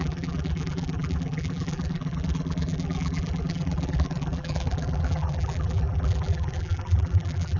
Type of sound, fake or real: fake